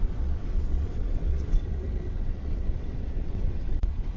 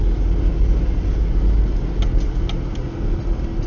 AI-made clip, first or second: first